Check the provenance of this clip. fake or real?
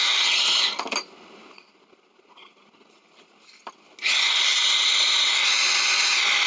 real